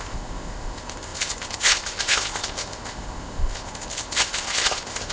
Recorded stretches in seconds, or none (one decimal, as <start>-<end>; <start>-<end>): none